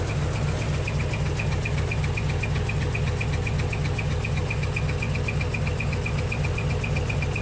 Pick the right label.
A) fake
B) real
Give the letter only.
B